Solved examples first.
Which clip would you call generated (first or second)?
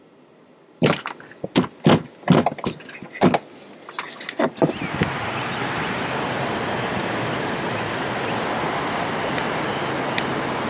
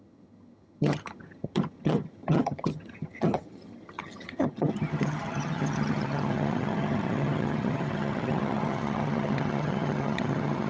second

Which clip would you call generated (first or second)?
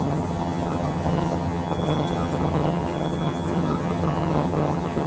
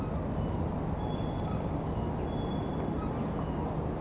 first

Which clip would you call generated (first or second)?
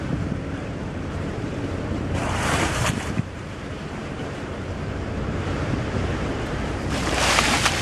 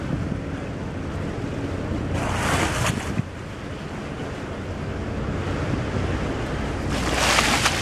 first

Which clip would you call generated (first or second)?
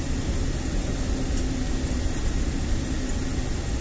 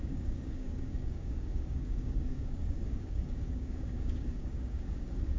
second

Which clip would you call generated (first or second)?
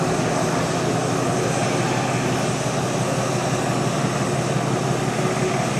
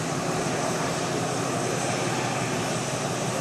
second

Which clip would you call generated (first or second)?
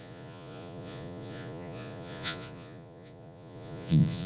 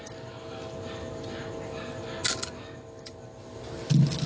first